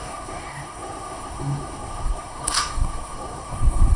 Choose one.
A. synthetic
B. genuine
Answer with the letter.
A